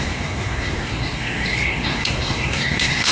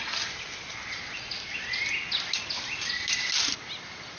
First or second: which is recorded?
second